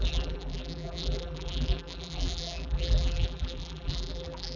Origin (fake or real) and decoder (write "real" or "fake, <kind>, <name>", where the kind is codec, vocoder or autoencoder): fake, vocoder, BigVGAN v2